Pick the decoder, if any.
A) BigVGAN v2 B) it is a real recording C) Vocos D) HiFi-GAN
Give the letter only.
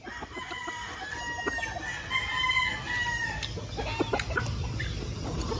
B